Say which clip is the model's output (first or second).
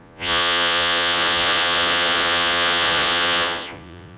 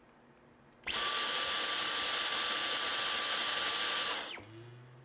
first